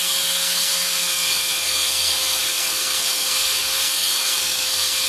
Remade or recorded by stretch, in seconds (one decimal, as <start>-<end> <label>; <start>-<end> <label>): 0.0-5.1 remade